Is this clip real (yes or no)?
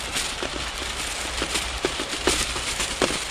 yes